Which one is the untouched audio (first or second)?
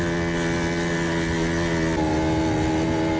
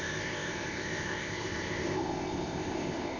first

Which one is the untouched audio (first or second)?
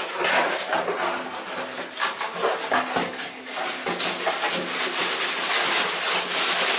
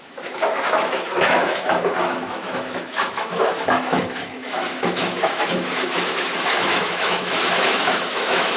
first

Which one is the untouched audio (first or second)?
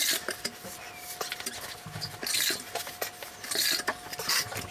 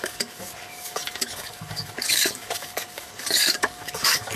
first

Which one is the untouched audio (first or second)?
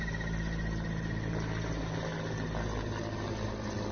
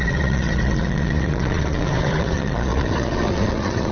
first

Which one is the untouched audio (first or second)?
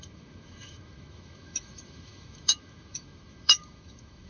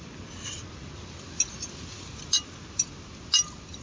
second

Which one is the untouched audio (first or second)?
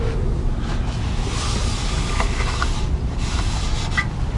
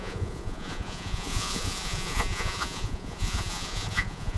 first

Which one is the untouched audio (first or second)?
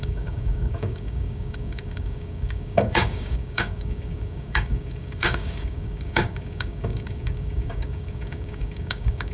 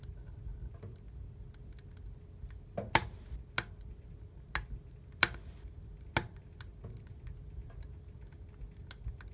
second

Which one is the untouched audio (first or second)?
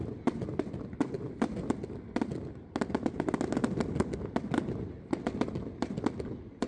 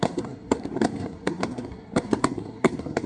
first